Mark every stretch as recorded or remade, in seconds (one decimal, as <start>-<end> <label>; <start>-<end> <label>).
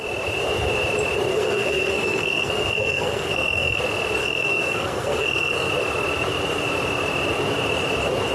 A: 0.0-1.3 recorded; 1.3-3.8 remade; 3.8-4.2 recorded; 4.2-5.7 remade; 5.7-8.3 recorded